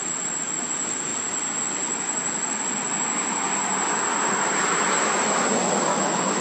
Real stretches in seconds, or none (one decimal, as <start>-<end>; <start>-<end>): 0.0-5.9